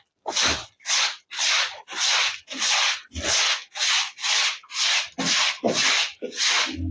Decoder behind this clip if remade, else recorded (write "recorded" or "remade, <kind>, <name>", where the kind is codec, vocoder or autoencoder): recorded